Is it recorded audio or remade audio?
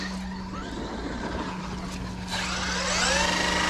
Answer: recorded